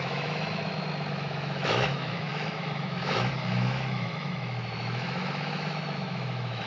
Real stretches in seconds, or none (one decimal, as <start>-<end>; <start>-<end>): 0.6-1.1